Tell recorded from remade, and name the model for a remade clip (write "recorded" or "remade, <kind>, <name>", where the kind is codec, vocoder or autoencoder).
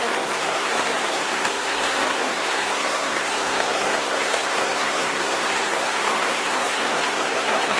remade, codec, SNAC